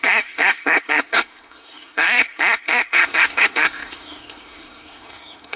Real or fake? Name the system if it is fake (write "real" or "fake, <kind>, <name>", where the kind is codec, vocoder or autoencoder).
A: fake, codec, SNAC